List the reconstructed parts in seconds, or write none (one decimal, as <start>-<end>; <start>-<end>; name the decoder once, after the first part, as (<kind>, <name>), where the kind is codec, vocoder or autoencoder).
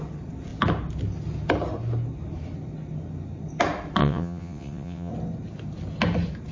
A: 4.0-5.1 (vocoder, WaveNeXt)